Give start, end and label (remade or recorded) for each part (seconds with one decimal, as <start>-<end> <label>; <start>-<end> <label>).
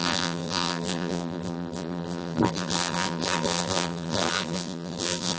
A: 0.0-5.4 remade